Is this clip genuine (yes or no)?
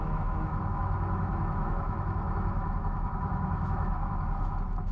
no